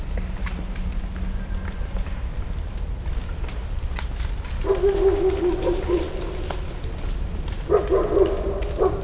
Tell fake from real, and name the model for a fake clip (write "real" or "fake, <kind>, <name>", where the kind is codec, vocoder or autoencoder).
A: real